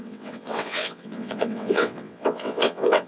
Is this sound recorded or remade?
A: remade